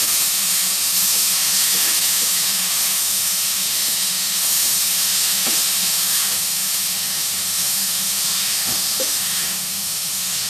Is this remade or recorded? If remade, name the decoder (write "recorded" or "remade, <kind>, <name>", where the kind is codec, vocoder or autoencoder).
remade, autoencoder, DAC-VAE